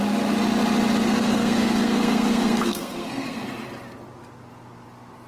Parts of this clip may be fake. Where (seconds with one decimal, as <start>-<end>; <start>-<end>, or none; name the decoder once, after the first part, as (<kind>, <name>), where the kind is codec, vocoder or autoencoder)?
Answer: 1.0-3.4 (codec, SNAC)